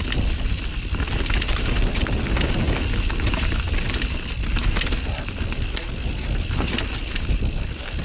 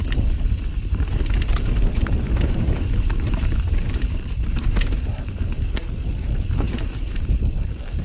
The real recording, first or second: first